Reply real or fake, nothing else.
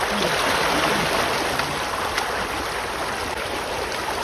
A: real